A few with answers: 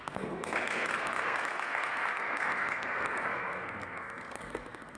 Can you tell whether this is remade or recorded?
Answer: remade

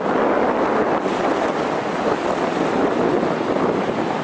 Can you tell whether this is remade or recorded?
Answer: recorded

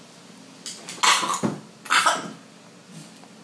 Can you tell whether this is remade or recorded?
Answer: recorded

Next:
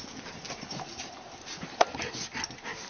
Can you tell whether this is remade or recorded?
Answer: recorded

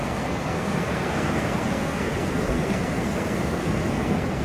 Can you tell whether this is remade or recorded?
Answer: remade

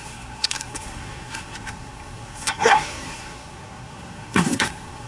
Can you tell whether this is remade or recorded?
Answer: remade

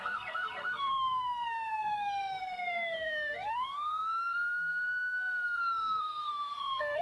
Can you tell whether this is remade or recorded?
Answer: remade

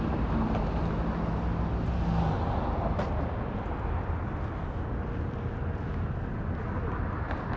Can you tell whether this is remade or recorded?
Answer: recorded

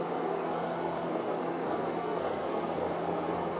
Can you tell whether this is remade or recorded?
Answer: remade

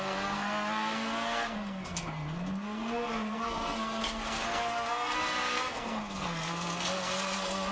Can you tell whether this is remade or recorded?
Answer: remade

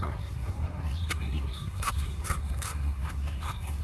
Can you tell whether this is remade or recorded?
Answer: remade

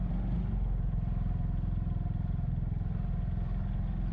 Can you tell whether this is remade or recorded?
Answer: recorded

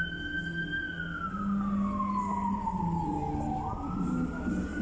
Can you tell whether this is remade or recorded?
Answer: recorded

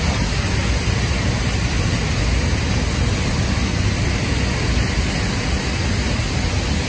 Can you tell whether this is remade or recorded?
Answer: recorded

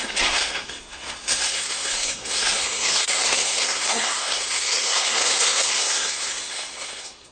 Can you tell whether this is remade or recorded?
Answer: remade